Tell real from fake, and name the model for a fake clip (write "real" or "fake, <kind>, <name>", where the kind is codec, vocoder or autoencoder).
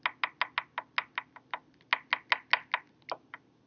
real